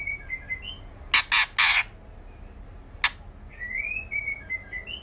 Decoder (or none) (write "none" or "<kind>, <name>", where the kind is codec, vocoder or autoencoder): none